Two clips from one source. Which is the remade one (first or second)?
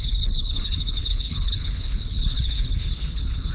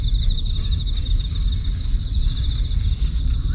first